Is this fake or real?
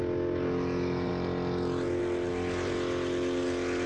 real